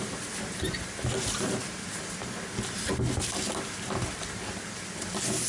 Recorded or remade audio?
recorded